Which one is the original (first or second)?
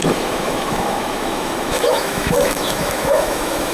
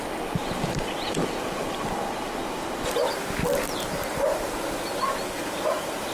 second